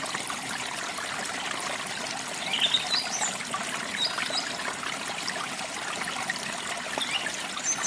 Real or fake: real